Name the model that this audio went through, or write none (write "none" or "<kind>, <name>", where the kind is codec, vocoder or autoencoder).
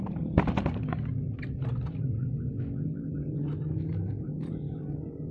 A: none